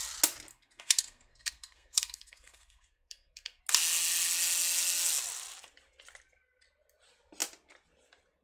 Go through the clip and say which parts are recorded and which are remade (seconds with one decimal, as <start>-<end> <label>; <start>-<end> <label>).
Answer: 0.0-0.5 recorded; 0.5-3.6 remade; 3.6-8.4 recorded